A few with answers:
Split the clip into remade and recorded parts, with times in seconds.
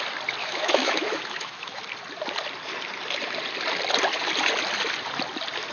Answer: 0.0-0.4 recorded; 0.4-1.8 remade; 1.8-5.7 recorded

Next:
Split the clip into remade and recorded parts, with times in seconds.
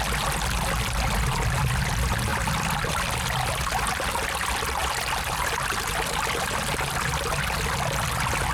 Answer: 0.0-2.3 recorded; 2.3-3.0 remade; 3.0-4.8 recorded; 4.8-6.9 remade; 6.9-8.5 recorded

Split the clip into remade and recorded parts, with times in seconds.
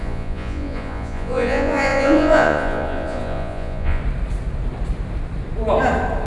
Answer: 0.0-4.0 remade; 4.0-6.3 recorded